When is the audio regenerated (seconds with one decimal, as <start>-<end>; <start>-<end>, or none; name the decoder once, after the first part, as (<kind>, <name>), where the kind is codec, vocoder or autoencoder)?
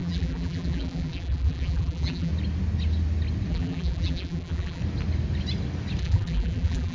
0.0-2.3 (vocoder, BigVGAN v2); 3.5-4.8; 6.0-6.9